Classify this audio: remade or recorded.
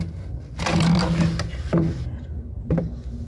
recorded